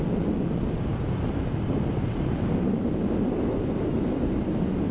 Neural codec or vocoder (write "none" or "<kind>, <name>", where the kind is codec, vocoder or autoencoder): none